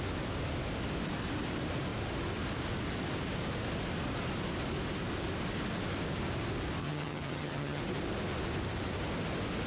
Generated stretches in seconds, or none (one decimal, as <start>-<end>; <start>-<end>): 6.8-7.8